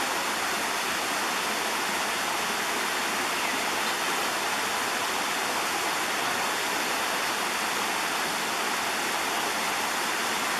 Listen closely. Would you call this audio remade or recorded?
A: recorded